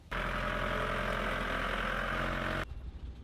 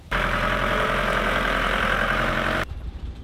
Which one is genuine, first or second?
first